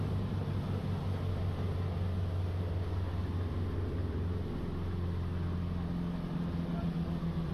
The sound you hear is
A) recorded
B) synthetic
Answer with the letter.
A